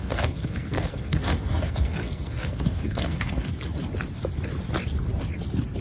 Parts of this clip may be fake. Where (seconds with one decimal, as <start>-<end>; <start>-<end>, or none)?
0.0-3.5

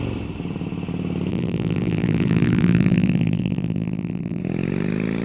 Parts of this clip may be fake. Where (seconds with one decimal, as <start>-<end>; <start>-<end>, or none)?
1.3-4.4